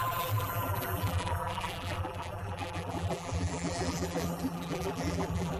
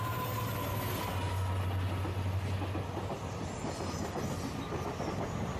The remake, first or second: first